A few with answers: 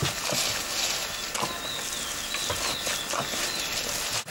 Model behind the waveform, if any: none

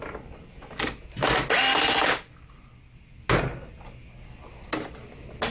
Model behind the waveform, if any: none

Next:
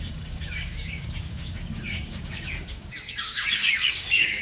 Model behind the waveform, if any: codec, DAC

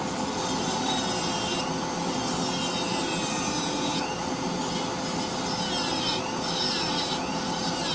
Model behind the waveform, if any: none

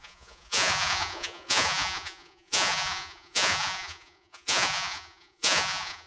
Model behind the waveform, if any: vocoder, Vocos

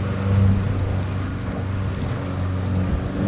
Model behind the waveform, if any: none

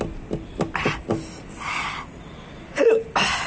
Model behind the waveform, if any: none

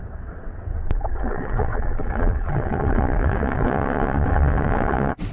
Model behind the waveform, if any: vocoder, WaveNeXt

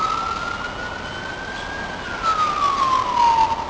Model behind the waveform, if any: none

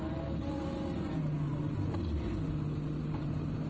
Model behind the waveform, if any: none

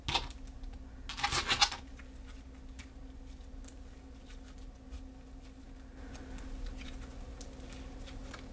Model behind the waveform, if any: none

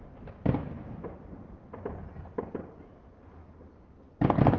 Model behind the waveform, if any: none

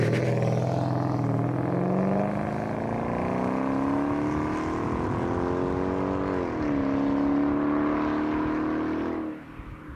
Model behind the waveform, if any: none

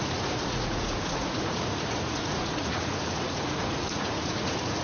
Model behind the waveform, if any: vocoder, Vocos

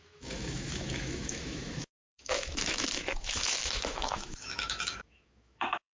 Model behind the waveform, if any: autoencoder, DAC-VAE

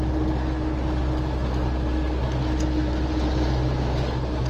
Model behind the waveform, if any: none